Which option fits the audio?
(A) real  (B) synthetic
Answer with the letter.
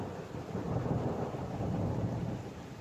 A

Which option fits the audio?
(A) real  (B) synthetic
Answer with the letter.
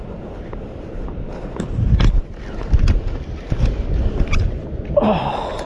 A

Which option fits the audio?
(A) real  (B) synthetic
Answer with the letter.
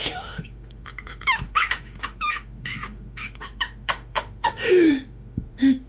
B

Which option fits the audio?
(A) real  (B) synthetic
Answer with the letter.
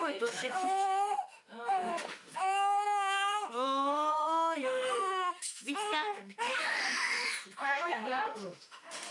B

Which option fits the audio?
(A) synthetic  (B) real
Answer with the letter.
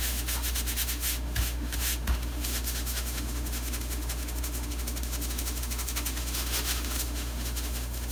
A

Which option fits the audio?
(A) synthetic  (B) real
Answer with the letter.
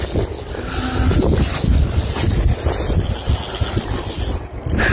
B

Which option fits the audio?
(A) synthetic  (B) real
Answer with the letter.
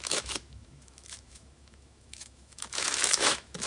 A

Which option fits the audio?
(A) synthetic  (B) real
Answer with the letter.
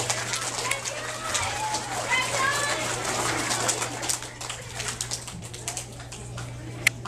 B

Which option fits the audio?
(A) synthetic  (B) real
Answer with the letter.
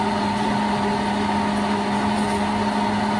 B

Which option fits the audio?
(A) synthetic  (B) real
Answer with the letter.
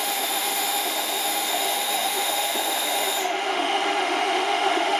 A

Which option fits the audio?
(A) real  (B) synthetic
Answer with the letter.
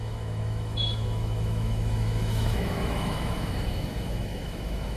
B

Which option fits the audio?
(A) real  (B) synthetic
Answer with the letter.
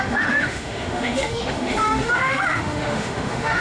B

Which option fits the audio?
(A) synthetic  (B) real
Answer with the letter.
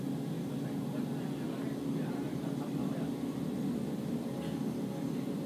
B